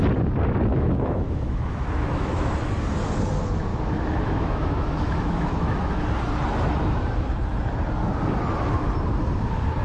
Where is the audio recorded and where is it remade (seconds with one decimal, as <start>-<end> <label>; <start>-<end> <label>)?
0.0-0.7 recorded; 0.7-2.5 remade; 2.5-3.7 recorded; 3.7-5.9 remade; 5.9-9.8 recorded